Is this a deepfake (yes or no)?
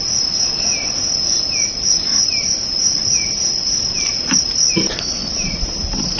no